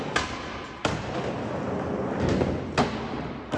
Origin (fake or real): real